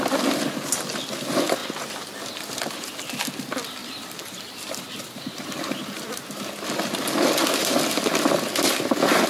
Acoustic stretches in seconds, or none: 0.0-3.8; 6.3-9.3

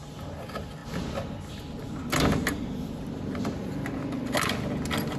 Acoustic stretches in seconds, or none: 0.0-5.2

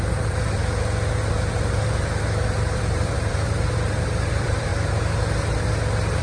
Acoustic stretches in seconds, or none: 0.6-1.3; 4.7-6.2